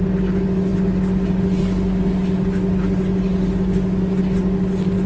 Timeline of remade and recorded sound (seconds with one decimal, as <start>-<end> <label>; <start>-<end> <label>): 0.0-5.1 recorded